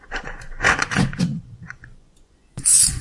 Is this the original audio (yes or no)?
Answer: no